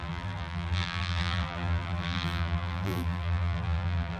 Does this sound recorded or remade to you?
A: remade